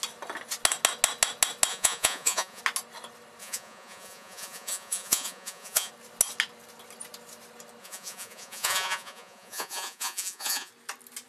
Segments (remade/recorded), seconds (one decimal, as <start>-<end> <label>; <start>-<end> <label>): 0.0-1.7 recorded; 1.7-2.6 remade; 2.6-3.4 recorded; 3.4-5.9 remade; 5.9-7.8 recorded; 7.8-10.7 remade; 10.7-11.3 recorded